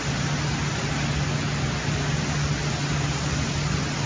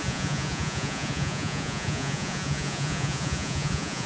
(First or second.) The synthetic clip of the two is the second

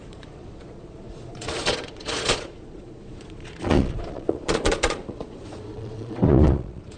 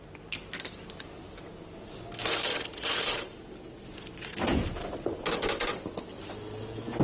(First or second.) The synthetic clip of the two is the first